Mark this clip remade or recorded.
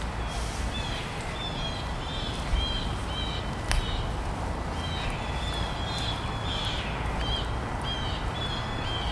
recorded